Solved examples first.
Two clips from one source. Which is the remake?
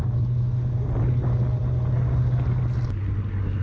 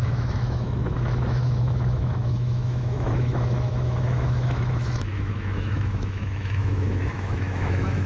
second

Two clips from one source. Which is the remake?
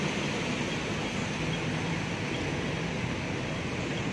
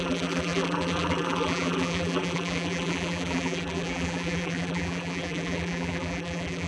second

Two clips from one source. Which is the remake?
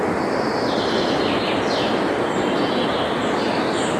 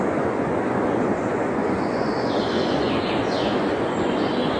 second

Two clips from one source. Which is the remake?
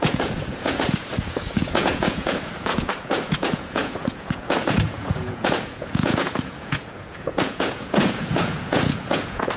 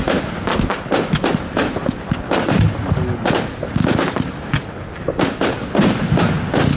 first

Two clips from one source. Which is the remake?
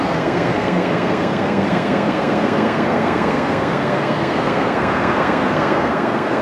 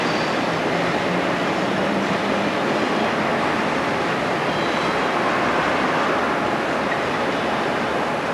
first